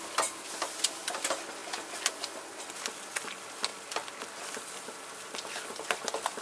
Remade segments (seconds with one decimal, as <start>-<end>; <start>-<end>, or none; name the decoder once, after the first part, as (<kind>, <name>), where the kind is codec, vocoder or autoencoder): none